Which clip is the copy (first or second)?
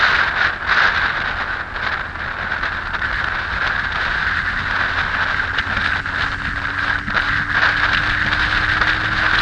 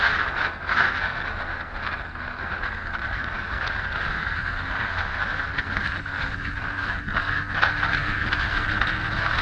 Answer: second